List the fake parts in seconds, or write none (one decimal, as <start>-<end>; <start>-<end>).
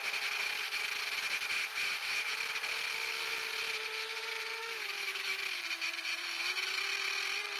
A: 4.6-5.4; 6.1-6.8